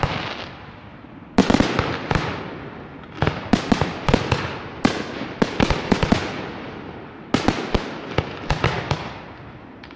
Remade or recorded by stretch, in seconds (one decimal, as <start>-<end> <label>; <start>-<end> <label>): 0.0-10.0 recorded